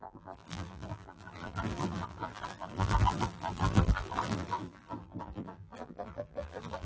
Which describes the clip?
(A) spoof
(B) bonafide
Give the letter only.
A